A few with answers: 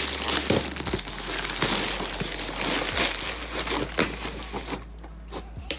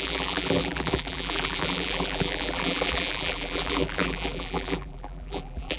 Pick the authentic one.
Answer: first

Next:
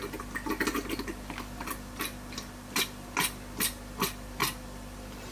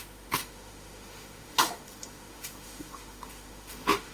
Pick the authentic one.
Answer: first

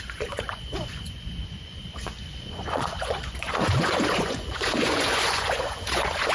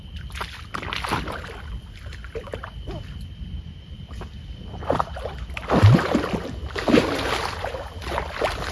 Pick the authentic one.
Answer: second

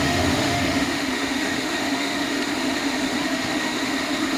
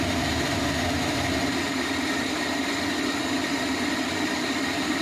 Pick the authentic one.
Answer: second